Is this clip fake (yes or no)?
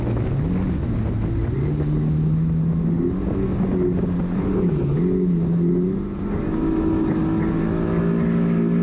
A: no